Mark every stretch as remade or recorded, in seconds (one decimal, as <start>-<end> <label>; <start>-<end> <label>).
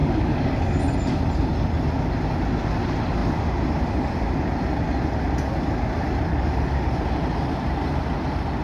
0.0-0.8 remade; 0.8-6.3 recorded; 6.3-6.9 remade; 6.9-8.6 recorded